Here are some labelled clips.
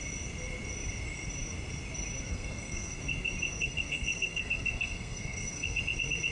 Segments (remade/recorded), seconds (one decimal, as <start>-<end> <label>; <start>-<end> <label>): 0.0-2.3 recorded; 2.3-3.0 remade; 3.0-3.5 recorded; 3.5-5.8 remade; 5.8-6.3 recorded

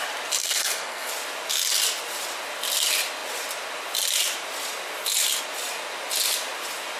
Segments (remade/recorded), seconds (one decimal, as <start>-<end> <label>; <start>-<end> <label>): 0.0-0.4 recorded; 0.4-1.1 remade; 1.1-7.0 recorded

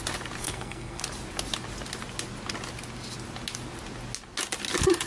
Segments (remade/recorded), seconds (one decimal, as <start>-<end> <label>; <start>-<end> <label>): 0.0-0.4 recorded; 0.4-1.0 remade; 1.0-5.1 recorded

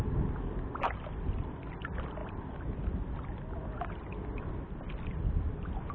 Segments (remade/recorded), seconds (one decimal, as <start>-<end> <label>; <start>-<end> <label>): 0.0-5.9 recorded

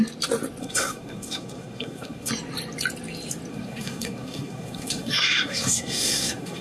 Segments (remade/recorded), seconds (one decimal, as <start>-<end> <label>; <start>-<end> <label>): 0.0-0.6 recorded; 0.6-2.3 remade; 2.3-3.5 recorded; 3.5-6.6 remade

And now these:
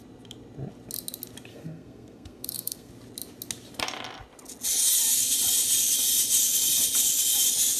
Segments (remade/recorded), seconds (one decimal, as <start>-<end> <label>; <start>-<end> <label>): 0.0-1.5 recorded; 1.5-2.9 remade; 2.9-7.8 recorded

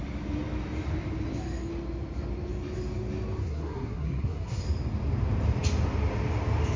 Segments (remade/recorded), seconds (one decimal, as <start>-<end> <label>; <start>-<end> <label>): 0.0-3.4 recorded; 3.4-4.6 remade; 4.6-6.8 recorded